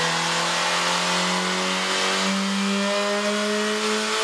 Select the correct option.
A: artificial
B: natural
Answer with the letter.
B